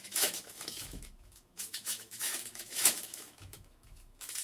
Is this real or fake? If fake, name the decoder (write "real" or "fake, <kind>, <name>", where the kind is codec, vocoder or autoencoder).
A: fake, autoencoder, DAC-VAE